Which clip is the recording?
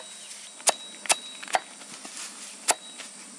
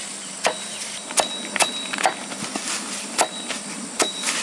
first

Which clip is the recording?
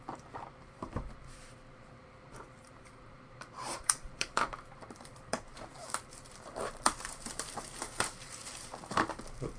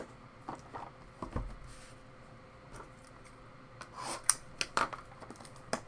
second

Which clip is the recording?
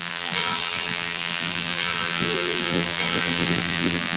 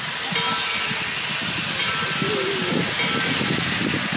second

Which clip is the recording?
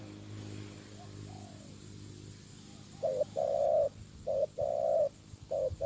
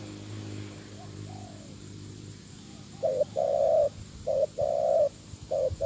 first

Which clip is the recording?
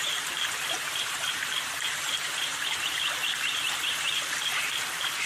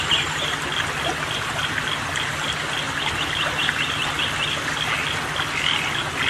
second